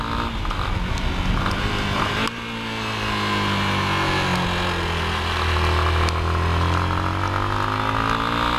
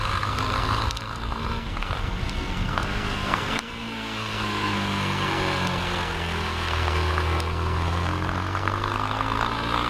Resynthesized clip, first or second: second